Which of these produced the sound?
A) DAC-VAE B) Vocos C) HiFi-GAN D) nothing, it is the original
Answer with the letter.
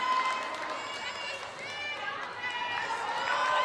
D